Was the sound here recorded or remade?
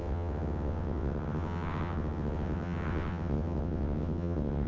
remade